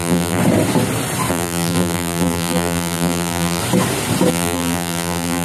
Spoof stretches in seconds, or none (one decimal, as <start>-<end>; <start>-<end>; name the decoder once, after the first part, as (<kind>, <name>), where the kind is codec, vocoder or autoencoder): 0.0-0.4 (vocoder, BigVGAN v2); 1.3-3.6; 4.3-5.4